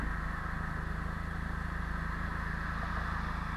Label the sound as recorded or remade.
recorded